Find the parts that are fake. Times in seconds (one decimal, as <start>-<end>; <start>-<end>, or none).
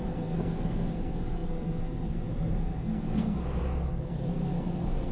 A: 0.0-5.1